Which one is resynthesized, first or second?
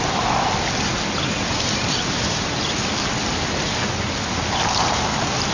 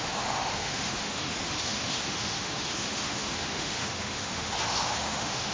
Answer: second